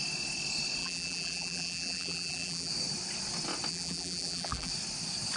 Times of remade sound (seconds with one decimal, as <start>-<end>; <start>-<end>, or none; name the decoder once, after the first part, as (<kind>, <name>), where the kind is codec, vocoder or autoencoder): 0.8-2.7 (vocoder, BigVGAN v2); 3.7-4.7